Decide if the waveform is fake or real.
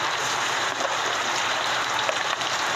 fake